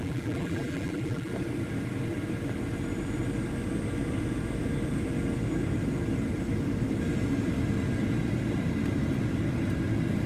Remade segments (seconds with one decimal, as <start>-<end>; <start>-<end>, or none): 0.0-1.3